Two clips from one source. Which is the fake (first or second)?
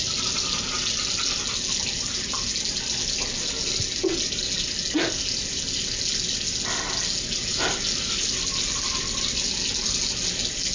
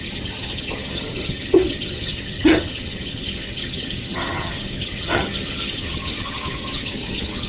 second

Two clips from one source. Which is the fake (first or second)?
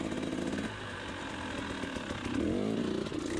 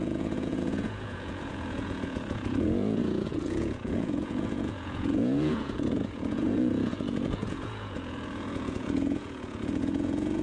second